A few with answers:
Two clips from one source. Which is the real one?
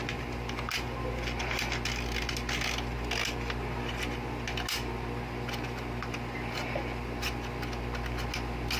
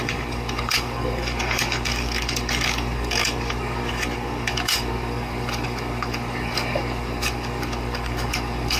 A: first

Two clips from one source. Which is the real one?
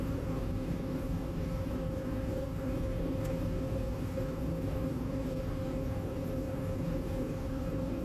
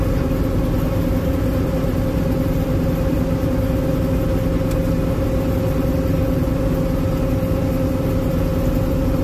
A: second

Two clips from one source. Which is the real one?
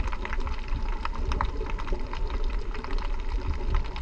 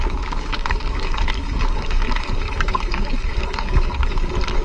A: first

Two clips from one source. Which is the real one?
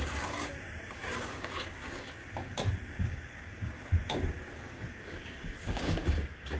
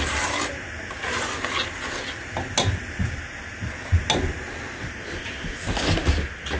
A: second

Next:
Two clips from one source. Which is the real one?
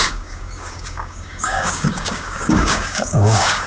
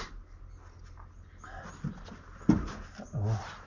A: second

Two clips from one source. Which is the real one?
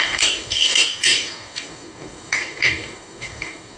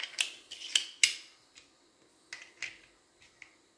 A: second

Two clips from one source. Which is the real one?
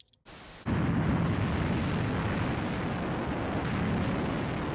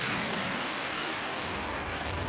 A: first